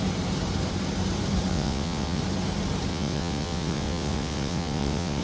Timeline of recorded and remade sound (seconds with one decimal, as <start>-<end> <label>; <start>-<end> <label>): 0.0-1.5 recorded; 1.5-2.2 remade; 2.2-2.9 recorded; 2.9-5.2 remade